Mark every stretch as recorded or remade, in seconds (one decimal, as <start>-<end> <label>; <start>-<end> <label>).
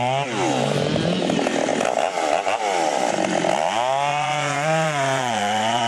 0.0-4.1 recorded; 4.1-5.9 remade